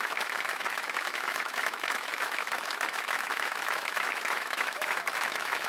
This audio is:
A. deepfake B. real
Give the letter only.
A